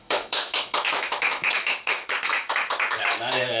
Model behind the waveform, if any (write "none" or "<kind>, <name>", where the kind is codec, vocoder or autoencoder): autoencoder, DAC-VAE